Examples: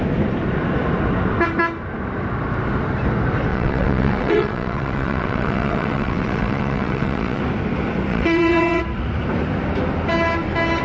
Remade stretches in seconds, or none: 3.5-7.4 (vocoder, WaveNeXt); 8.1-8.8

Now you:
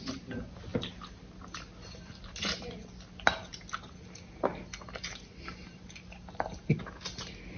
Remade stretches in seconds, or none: none

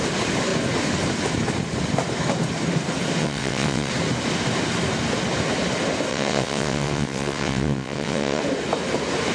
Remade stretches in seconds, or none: 3.2-3.9 (vocoder, WaveNeXt); 6.1-8.4

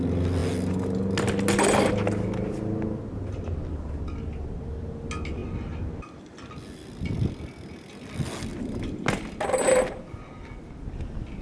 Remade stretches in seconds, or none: none